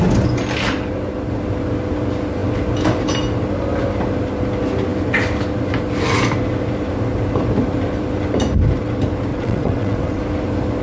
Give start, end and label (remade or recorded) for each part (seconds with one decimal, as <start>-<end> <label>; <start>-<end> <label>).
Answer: 0.0-9.3 recorded; 9.3-10.2 remade; 10.2-10.8 recorded